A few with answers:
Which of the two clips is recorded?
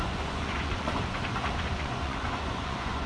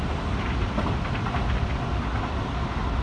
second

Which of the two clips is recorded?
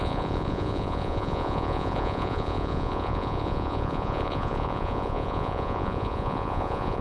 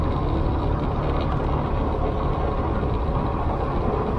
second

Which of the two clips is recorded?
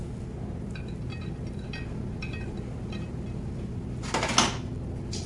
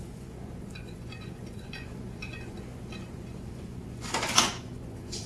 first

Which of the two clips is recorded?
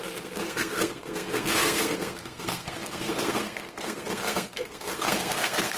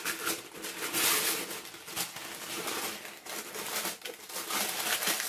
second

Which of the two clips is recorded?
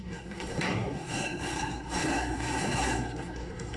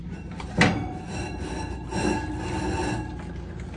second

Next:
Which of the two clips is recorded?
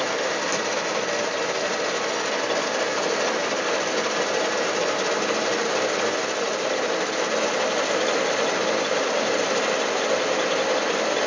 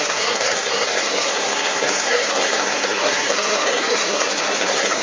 first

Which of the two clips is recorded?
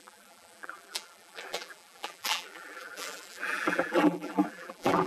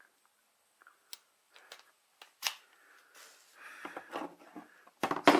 second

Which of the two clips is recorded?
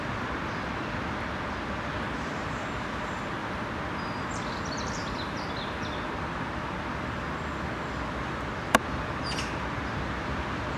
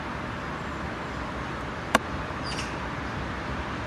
first